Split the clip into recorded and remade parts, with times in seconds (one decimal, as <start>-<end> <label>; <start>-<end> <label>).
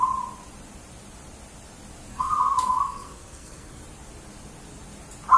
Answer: 0.0-2.1 recorded; 2.1-3.8 remade; 3.8-5.4 recorded